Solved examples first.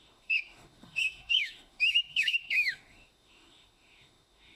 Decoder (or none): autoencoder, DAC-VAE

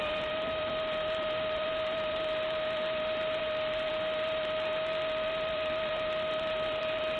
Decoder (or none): vocoder, BigVGAN v2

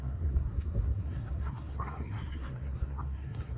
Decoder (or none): codec, SNAC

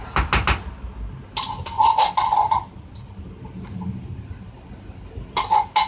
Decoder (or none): none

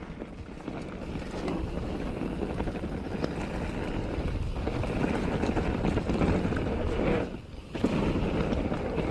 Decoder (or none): none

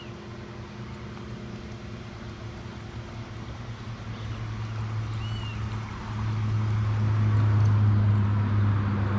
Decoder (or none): none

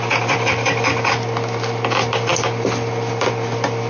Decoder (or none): none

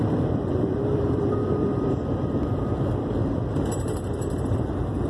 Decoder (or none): vocoder, BigVGAN v2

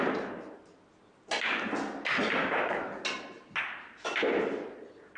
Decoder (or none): none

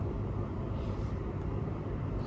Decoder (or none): vocoder, BigVGAN v2